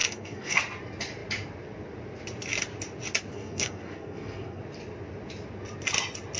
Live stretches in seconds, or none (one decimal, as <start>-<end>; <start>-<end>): 0.6-3.3; 4.6-6.4